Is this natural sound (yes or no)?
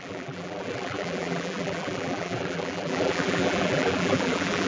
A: no